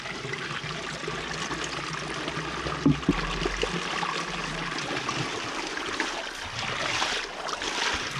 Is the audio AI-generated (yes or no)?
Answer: no